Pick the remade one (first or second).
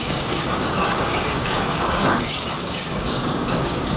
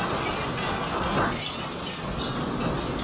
first